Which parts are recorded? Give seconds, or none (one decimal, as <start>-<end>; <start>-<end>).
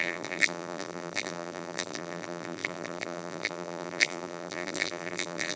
none